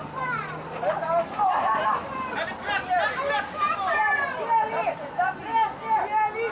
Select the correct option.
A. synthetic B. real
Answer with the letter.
B